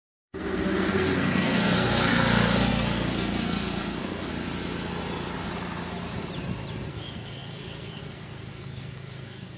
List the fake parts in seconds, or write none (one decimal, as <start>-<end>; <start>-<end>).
0.0-4.3; 6.9-9.6